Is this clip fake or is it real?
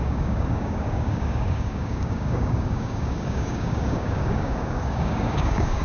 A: fake